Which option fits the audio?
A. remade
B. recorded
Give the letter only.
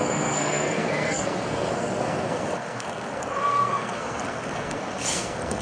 A